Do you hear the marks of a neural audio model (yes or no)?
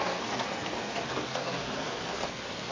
yes